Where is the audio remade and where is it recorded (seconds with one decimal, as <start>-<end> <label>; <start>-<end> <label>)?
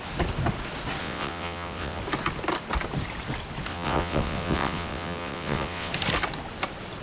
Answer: 0.0-1.0 recorded; 1.0-2.0 remade; 2.0-3.7 recorded; 3.7-5.9 remade; 5.9-7.0 recorded